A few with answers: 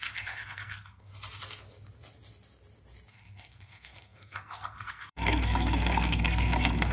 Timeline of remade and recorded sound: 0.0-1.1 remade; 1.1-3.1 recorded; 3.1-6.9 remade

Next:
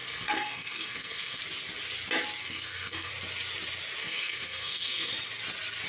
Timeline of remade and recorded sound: 0.0-1.4 remade; 1.4-2.4 recorded; 2.4-3.1 remade; 3.1-4.0 recorded; 4.0-5.1 remade; 5.1-5.9 recorded

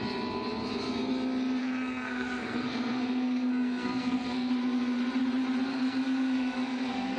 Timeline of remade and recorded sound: 0.0-1.6 recorded; 1.6-4.5 remade; 4.5-5.7 recorded; 5.7-7.2 remade

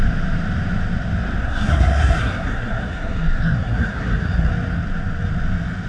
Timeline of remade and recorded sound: 0.0-1.4 recorded; 1.4-4.5 remade; 4.5-5.9 recorded

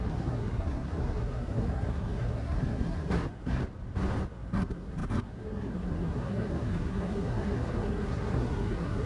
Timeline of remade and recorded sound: 0.0-3.6 remade; 3.6-4.3 recorded; 4.3-9.1 remade

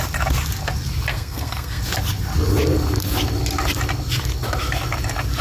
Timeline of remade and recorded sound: 0.0-1.1 recorded; 1.1-1.8 remade; 1.8-5.4 recorded

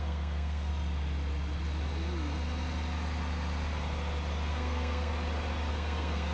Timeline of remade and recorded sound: 0.0-0.7 remade; 0.7-4.5 recorded; 4.5-5.1 remade; 5.1-5.7 recorded; 5.7-6.3 remade